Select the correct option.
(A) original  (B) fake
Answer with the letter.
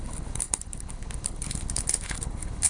B